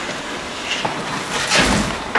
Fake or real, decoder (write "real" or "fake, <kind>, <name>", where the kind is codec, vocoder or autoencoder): real